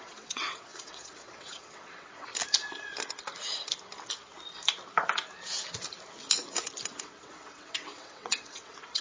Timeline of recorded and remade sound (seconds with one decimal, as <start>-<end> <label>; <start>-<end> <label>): 0.0-2.3 remade; 2.3-7.0 recorded; 7.0-9.0 remade